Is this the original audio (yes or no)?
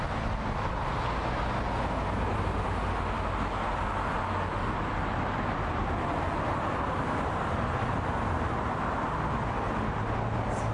yes